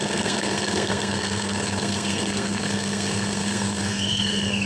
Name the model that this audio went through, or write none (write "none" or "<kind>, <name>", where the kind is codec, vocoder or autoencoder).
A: codec, SNAC